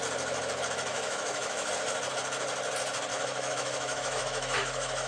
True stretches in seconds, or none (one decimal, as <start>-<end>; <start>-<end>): 0.0-0.9; 1.7-3.1